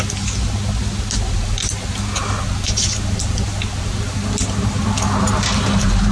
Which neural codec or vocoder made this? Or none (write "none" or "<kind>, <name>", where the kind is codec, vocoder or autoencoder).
none